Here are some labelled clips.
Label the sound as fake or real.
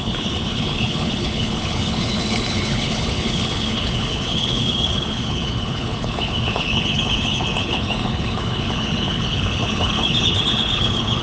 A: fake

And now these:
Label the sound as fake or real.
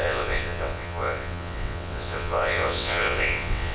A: fake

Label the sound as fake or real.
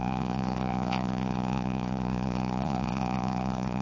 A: fake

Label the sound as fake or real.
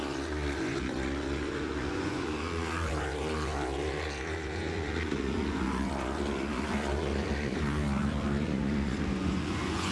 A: fake